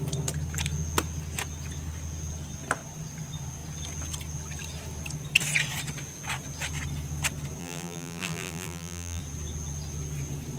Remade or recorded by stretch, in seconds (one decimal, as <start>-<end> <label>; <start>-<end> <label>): 0.0-7.6 recorded; 7.6-9.2 remade; 9.2-10.6 recorded